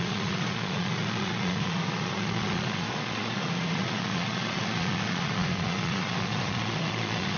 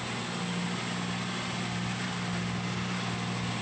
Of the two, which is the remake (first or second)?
first